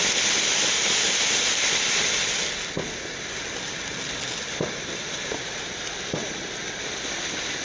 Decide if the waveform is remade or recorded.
recorded